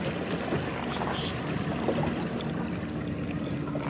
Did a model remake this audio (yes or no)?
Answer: no